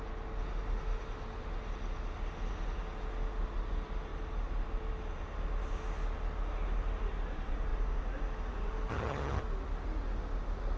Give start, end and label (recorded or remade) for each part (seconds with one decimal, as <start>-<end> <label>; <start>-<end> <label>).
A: 0.0-8.9 recorded; 8.9-9.4 remade; 9.4-10.8 recorded